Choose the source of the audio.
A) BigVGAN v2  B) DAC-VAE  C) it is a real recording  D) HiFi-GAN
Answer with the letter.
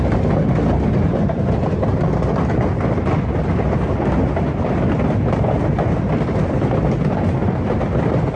C